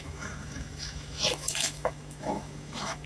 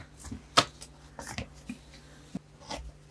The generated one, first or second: first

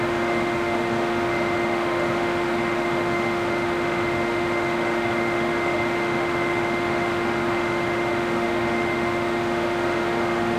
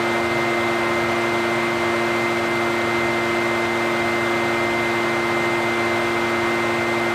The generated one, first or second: first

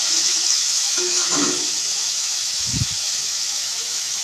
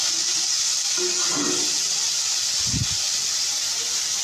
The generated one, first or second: first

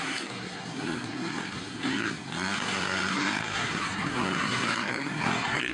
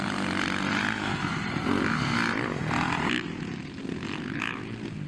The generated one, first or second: first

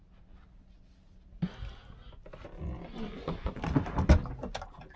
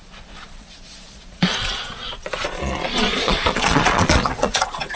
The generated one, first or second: second